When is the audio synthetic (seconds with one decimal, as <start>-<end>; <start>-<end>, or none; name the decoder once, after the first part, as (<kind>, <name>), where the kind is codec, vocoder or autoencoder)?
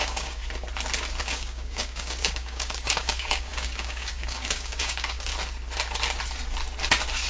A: 0.0-0.4 (codec, DAC); 1.2-5.3